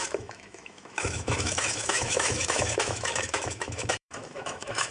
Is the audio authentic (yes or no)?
no